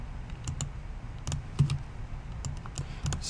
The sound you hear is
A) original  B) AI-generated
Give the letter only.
A